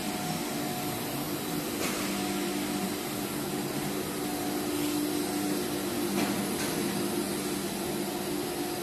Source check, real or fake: real